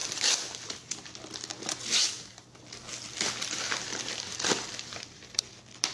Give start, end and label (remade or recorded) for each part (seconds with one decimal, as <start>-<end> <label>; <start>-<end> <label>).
0.0-5.9 remade